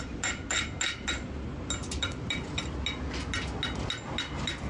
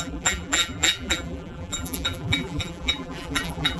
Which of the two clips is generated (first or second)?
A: second